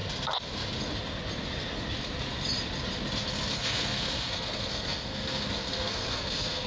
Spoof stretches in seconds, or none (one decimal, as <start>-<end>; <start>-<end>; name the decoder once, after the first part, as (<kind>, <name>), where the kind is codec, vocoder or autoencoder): 3.5-6.7 (codec, SNAC)